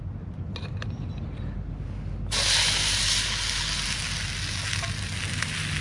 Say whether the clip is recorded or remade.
recorded